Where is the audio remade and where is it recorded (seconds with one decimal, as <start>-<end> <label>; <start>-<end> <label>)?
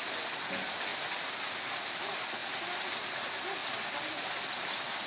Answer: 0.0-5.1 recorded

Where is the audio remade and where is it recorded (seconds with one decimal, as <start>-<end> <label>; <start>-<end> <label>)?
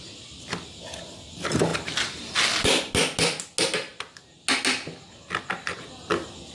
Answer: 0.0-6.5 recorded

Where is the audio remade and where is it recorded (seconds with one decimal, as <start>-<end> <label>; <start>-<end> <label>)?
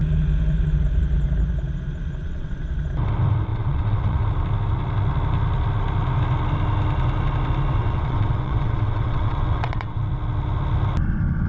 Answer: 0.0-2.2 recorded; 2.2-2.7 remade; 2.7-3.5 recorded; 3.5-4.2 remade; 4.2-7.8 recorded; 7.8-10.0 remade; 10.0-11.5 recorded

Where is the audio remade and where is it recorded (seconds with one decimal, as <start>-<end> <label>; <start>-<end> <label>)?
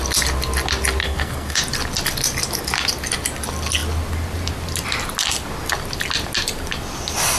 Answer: 0.0-1.0 recorded; 1.0-1.6 remade; 1.6-7.4 recorded